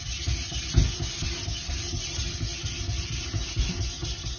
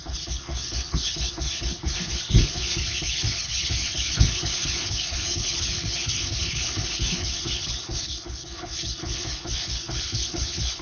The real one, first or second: first